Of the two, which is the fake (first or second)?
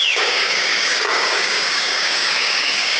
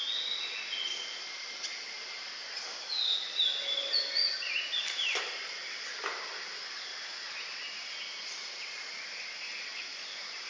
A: first